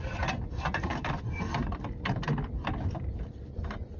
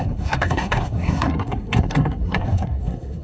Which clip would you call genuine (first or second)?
first